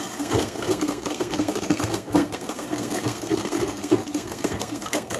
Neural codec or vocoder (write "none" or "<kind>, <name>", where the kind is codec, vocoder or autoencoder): codec, SNAC